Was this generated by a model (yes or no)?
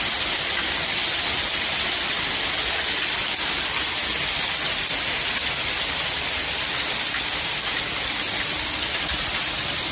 no